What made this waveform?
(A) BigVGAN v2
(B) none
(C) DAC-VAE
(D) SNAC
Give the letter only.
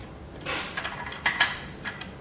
B